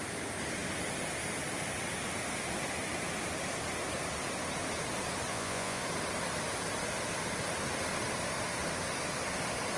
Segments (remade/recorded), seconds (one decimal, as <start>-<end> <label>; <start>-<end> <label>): 0.0-5.3 recorded; 5.3-5.8 remade; 5.8-9.8 recorded